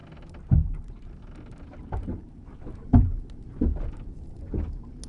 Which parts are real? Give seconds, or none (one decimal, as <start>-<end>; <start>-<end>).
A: 0.0-5.1